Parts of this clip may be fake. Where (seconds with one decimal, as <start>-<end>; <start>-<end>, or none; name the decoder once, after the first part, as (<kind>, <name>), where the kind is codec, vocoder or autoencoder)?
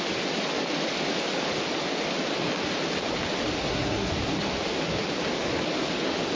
3.6-4.1 (codec, SNAC)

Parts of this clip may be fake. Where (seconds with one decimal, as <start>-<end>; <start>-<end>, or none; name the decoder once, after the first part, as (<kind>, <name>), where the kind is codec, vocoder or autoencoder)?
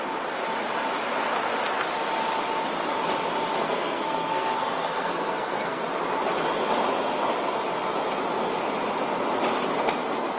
3.6-5.8 (codec, SNAC)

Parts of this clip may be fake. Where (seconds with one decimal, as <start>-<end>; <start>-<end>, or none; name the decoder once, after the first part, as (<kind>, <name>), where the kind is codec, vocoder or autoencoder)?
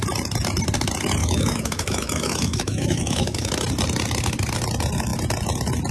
1.2-3.5 (autoencoder, DAC-VAE)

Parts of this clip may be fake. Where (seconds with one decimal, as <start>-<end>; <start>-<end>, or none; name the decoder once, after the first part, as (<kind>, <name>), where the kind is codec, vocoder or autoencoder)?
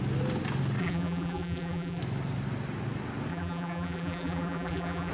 0.8-2.0 (vocoder, BigVGAN v2); 3.3-5.1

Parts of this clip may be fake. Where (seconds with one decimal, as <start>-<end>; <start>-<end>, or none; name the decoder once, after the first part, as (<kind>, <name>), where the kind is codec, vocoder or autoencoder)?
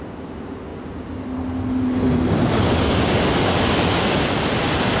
none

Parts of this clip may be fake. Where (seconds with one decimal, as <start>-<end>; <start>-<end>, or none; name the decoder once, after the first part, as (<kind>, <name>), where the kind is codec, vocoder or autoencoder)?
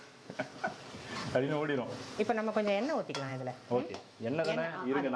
0.0-0.5 (autoencoder, DAC-VAE); 2.2-3.3; 3.8-5.2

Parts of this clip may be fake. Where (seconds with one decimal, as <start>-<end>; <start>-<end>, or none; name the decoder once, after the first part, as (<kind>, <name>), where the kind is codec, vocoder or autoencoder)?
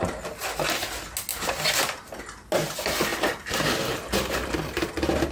none